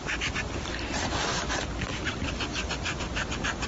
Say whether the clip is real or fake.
fake